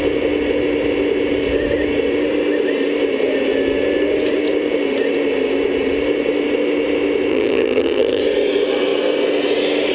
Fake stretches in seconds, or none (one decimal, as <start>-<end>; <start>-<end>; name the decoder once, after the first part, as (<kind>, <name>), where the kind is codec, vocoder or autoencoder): 7.3-8.2 (vocoder, HiFi-GAN)